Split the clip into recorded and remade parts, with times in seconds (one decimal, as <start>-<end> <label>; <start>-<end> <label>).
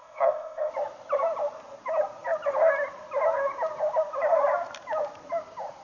0.0-0.7 remade; 0.7-5.8 recorded